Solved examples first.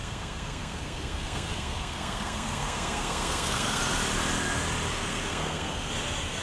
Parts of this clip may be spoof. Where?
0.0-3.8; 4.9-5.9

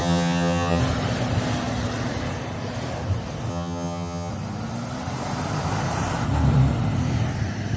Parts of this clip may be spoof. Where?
0.0-0.8; 3.5-4.3

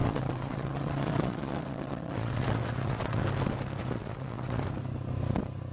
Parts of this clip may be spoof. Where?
0.0-3.2; 3.8-4.6

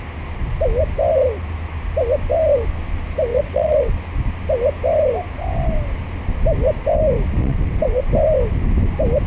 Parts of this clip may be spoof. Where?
3.3-4.0; 7.4-8.0

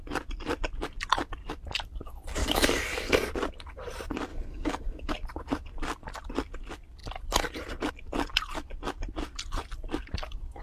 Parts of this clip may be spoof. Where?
2.4-3.3; 4.3-5.1

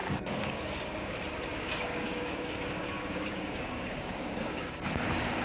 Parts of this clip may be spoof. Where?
0.0-1.1; 1.5-4.7

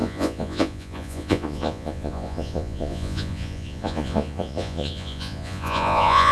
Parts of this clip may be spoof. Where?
0.0-6.3

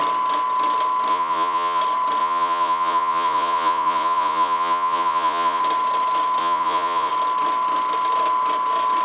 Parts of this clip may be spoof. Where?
1.1-1.8; 2.2-5.6; 6.4-7.1